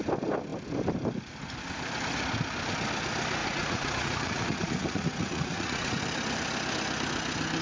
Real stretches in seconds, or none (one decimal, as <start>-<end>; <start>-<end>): 0.0-3.4; 6.0-7.6